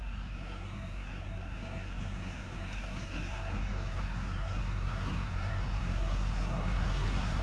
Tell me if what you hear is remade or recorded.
remade